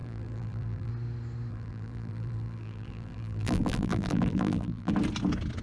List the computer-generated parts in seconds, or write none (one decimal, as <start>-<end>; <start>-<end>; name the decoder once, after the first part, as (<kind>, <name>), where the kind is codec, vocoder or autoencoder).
0.0-0.9 (vocoder, BigVGAN v2); 1.5-4.9